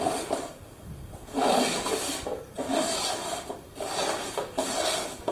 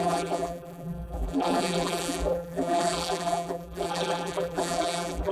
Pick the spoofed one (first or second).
second